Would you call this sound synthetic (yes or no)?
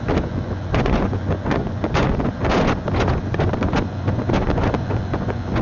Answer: yes